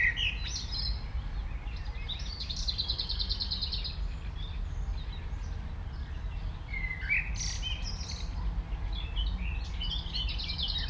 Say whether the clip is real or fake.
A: real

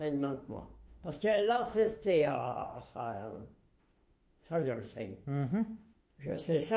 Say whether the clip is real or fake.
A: fake